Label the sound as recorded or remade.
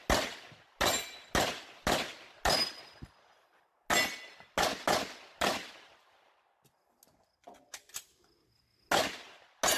recorded